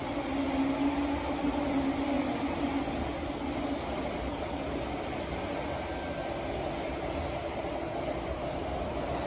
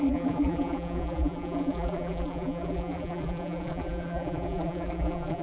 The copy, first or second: second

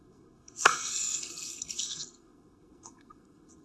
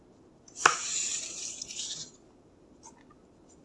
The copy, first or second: first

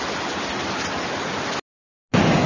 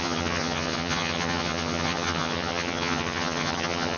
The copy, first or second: second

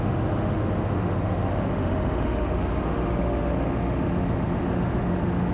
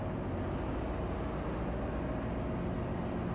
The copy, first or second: first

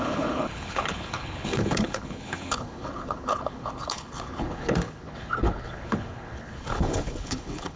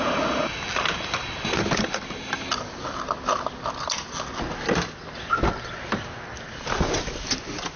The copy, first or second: first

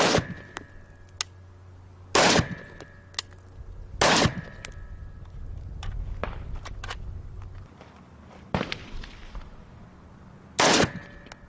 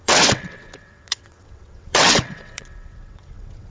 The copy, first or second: second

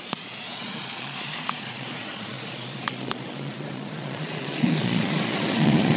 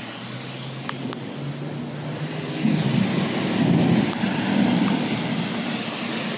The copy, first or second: first